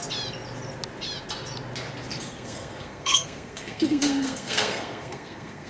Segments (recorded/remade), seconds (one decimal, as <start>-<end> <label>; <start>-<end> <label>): 0.0-2.0 recorded; 2.0-5.7 remade